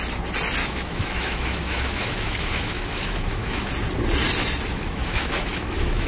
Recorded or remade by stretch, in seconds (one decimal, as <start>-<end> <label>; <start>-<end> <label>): 0.0-0.6 recorded; 0.6-3.6 remade; 3.6-4.7 recorded; 4.7-6.1 remade